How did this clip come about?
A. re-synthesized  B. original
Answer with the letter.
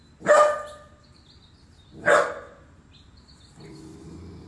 B